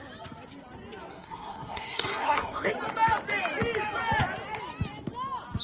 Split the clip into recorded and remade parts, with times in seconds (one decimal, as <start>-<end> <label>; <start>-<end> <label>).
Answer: 0.0-1.1 recorded; 1.1-2.7 remade; 2.7-5.6 recorded